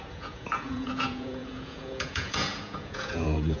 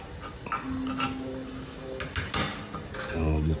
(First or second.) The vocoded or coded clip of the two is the first